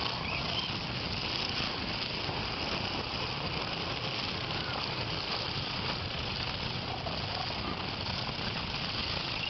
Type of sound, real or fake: real